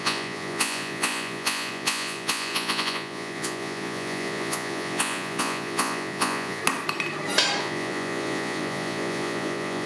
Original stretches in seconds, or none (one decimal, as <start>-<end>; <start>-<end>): 6.6-7.6